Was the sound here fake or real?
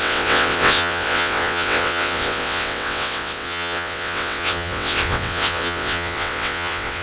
fake